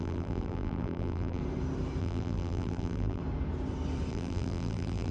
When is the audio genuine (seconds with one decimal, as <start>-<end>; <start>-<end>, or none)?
1.4-2.0; 3.2-4.1